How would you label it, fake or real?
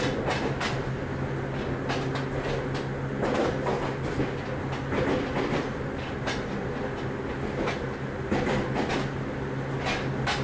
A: real